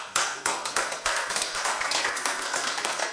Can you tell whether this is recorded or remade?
remade